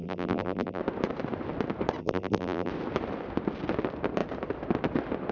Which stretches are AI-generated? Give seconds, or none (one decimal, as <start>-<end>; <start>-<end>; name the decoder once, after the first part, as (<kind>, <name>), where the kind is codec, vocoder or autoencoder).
0.0-0.8 (vocoder, BigVGAN v2); 2.0-2.7